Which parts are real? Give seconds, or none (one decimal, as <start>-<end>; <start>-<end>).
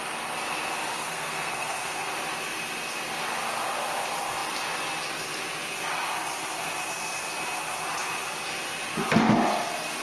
0.0-0.9; 2.1-10.0